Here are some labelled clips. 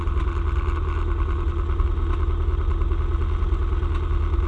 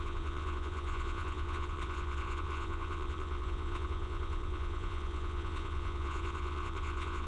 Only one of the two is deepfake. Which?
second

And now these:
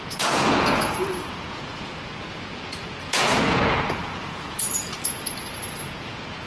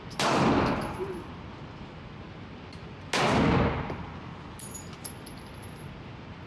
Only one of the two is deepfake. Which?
first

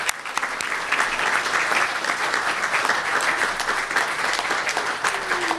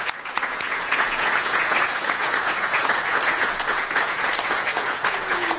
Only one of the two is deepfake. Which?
second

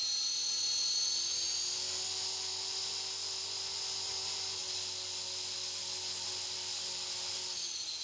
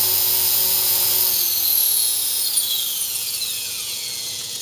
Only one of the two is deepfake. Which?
second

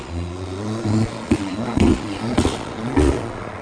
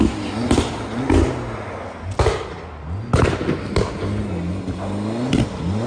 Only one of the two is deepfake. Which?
first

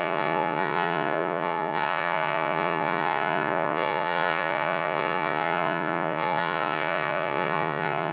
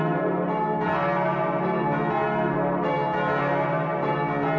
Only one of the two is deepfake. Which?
first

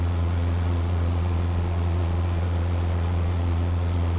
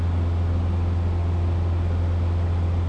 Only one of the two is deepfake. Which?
first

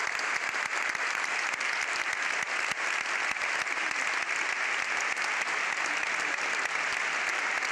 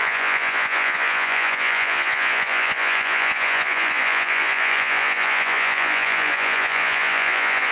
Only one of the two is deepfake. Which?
second